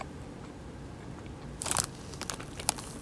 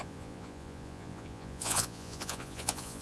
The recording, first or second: first